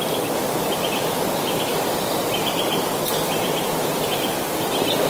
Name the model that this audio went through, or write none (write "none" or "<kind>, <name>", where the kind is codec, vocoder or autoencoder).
none